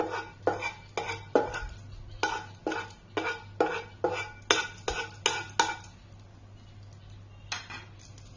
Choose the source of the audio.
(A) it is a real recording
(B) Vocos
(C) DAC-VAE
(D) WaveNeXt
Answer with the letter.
A